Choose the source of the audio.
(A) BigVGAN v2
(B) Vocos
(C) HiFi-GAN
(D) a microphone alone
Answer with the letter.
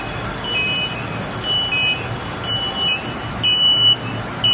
D